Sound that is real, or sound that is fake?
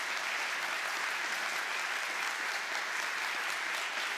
real